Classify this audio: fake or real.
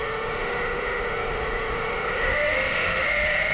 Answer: fake